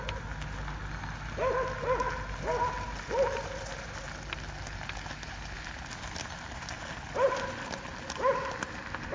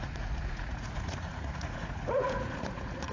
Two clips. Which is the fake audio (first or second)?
second